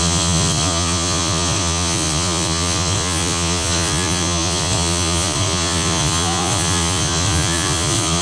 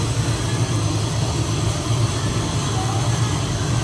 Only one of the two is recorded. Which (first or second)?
second